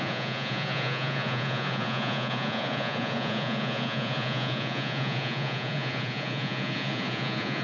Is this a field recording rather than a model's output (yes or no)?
no